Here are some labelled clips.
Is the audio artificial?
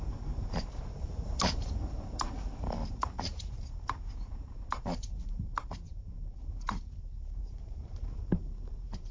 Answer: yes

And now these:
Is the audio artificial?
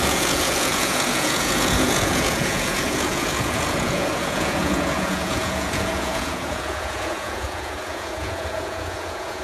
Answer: yes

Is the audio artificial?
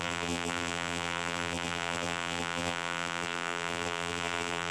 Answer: yes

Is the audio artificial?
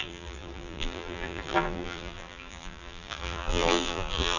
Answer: yes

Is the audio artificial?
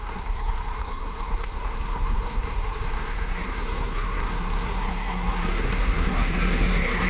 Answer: yes